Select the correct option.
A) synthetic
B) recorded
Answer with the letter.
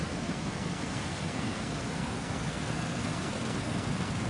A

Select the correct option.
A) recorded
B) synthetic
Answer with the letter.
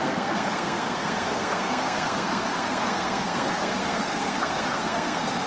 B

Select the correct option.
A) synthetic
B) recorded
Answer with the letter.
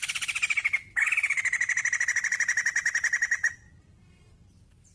B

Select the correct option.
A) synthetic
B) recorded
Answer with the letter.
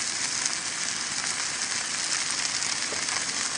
B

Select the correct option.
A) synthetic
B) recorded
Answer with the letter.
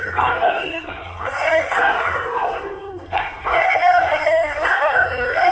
A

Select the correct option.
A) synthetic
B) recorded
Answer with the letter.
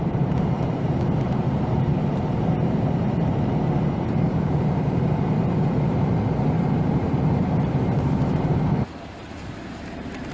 A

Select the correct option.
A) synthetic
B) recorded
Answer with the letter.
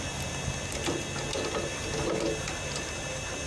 B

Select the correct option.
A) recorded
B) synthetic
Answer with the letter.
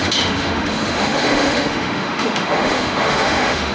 B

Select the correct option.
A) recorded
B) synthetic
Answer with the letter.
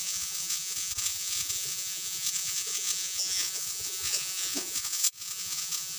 B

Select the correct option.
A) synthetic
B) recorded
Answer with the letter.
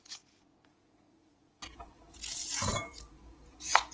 A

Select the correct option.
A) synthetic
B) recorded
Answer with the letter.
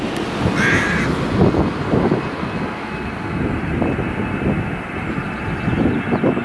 B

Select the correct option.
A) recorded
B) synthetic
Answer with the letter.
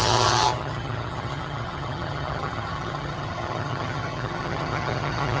B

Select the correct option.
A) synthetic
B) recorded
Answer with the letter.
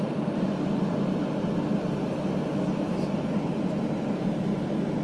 B